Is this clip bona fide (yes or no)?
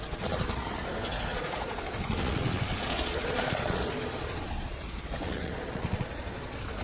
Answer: no